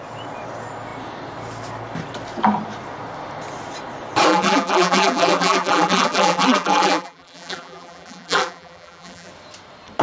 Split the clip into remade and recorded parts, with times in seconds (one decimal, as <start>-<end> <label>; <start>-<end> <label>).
0.0-4.3 recorded; 4.3-9.3 remade; 9.3-10.0 recorded